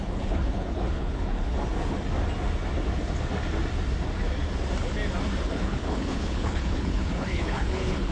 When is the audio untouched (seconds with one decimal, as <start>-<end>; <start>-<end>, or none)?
1.5-5.4